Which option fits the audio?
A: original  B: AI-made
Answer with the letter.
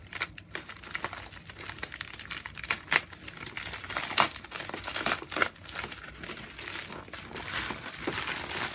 A